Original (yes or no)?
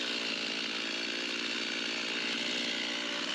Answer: yes